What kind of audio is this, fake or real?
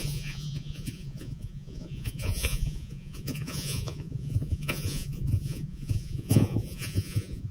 fake